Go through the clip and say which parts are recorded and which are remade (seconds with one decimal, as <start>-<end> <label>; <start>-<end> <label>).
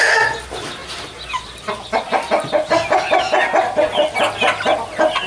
0.0-0.8 recorded; 0.8-3.6 remade; 3.6-5.3 recorded